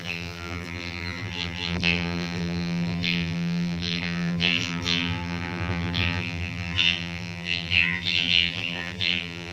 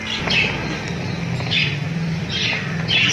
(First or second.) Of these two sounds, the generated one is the first